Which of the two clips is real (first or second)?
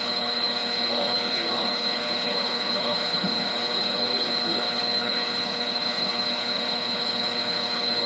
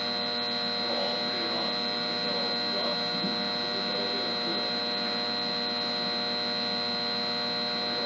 second